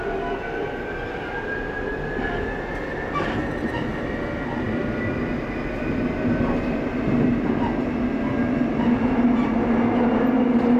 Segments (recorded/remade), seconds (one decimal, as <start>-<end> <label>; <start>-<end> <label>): 0.0-10.8 recorded